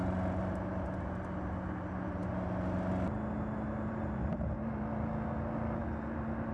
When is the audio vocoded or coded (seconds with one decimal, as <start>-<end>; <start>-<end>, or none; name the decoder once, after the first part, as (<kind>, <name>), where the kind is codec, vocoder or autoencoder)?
none